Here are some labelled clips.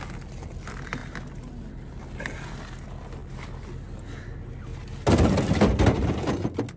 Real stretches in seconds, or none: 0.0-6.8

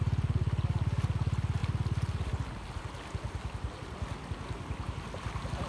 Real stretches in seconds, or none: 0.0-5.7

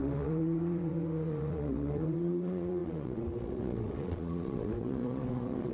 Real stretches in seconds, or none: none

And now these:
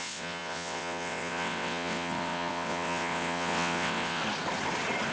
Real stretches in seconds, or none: 4.2-5.1

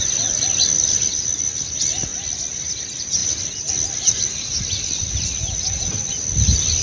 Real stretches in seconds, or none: 0.0-6.8